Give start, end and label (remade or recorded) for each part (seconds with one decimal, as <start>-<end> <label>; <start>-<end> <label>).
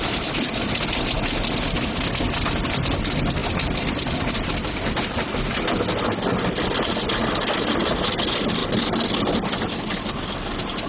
0.0-10.9 recorded